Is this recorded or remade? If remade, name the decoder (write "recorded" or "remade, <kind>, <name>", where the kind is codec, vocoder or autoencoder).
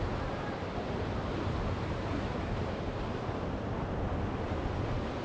recorded